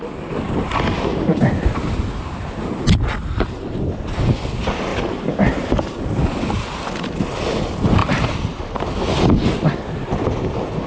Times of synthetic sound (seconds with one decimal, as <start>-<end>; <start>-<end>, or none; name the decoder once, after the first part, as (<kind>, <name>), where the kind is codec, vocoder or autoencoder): none